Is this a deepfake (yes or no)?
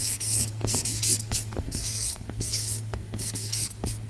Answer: yes